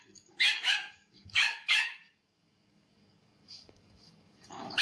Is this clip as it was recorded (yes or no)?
no